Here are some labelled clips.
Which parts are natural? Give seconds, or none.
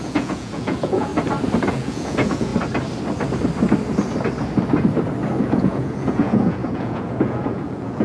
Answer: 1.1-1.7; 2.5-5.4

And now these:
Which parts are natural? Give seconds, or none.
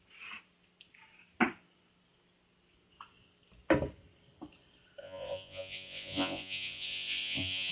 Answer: 0.0-5.0